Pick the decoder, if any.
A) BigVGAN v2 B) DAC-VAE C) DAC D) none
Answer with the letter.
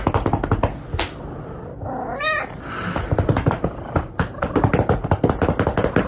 D